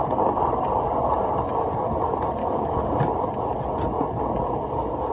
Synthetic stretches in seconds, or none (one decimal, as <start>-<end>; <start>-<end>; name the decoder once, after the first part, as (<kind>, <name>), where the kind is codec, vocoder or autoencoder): 2.4-3.0 (codec, DAC)